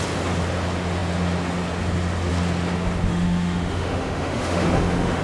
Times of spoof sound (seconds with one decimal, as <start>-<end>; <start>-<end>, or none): 3.1-5.2